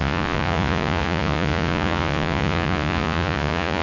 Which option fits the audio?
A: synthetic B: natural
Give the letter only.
A